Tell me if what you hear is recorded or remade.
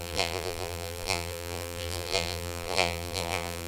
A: remade